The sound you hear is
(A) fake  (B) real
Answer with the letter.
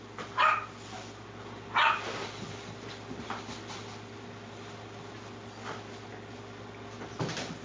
B